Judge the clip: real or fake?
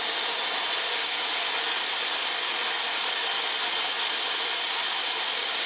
real